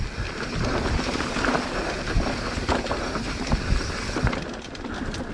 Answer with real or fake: real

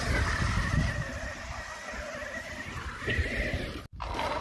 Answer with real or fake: real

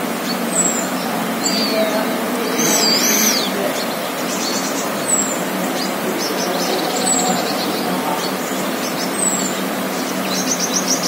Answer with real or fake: real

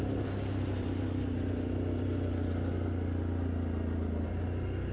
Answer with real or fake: real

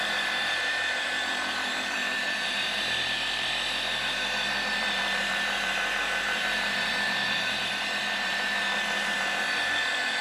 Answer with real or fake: fake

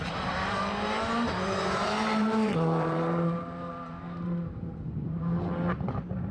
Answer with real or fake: fake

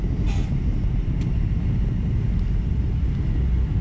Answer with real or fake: real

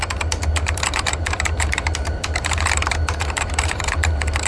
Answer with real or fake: fake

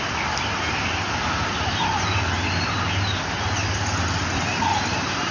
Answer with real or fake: real